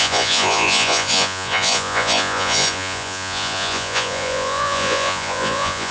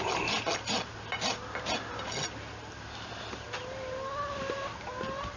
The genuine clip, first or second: second